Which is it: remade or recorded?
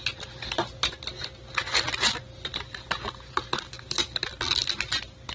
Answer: recorded